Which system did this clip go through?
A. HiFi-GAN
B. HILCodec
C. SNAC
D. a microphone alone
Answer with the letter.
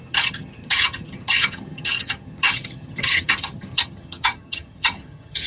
A